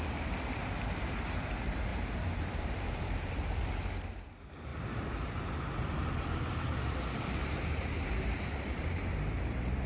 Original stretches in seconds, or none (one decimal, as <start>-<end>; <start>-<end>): 0.0-0.6; 1.5-1.9; 3.3-4.7; 5.6-7.4; 8.5-9.9